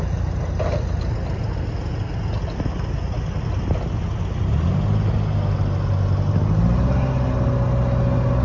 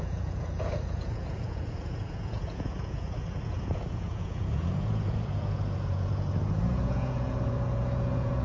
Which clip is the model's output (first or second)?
second